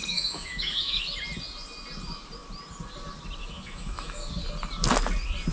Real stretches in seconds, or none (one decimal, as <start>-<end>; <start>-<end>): 1.0-3.4; 4.3-5.5